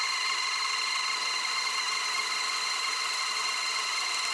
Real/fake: real